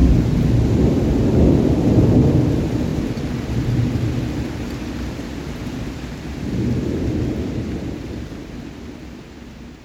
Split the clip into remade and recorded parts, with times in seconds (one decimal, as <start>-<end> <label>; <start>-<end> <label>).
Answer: 0.0-9.8 recorded